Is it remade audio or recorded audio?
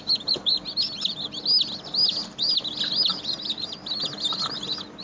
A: recorded